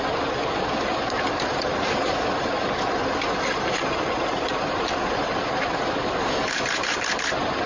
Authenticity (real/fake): fake